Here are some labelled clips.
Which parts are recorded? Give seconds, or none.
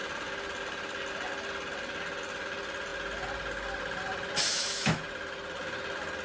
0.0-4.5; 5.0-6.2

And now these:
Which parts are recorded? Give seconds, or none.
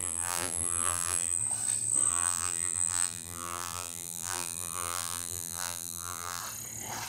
1.4-2.1; 6.4-7.1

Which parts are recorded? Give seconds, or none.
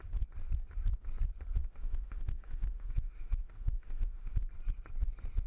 0.0-1.6; 4.5-5.5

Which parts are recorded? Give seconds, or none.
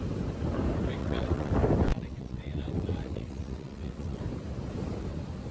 0.0-1.0; 1.5-1.9; 4.2-5.5